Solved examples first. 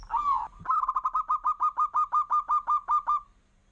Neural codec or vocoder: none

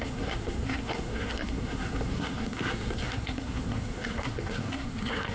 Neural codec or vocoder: codec, SNAC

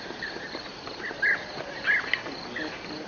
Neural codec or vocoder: none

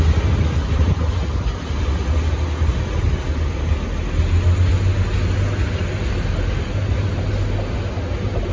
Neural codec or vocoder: none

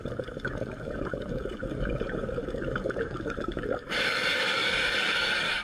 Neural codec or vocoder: codec, DAC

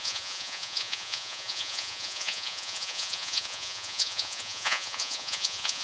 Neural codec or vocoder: vocoder, Vocos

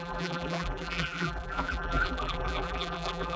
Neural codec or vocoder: vocoder, BigVGAN v2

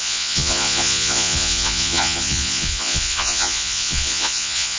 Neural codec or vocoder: vocoder, Vocos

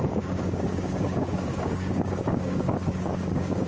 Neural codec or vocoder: codec, DAC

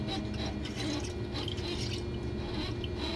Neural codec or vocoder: none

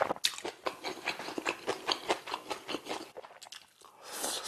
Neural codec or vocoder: none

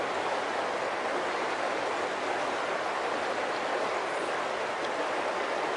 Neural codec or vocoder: none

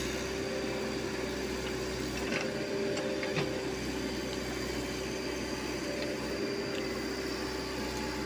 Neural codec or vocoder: none